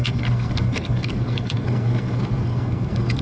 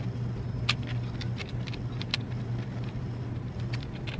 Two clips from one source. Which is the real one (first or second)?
second